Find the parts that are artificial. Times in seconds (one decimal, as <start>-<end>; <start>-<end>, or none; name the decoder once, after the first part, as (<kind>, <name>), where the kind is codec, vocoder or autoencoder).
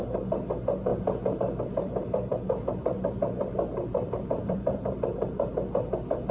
1.8-5.5 (vocoder, BigVGAN v2)